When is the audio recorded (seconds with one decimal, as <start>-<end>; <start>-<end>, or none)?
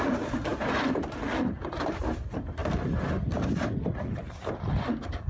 0.0-5.3